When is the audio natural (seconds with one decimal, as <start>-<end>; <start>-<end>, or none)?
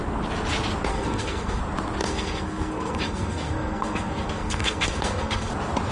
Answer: 0.0-0.9; 1.6-2.0; 5.5-5.9